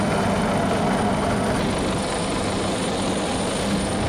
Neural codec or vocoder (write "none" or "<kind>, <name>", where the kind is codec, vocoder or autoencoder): none